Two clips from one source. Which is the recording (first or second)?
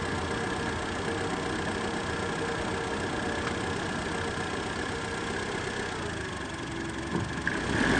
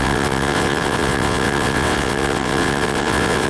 first